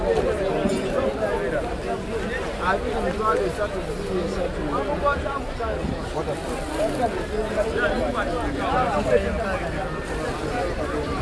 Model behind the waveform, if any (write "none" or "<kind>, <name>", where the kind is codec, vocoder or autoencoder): none